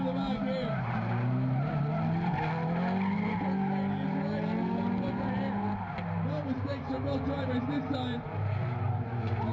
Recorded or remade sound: recorded